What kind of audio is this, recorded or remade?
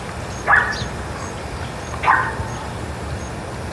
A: recorded